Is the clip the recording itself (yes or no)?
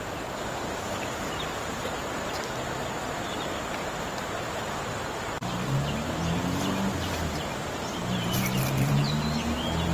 no